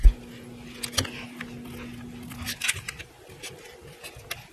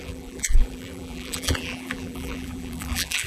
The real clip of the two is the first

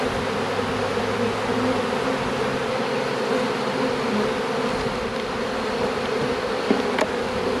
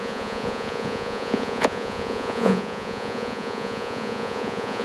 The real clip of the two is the first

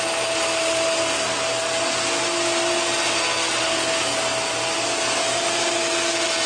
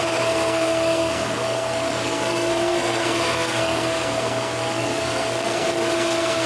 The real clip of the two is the first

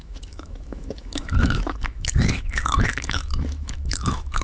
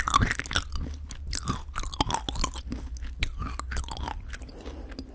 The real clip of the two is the second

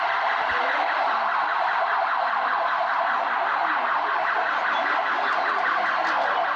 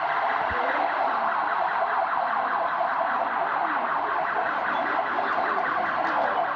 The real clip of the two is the first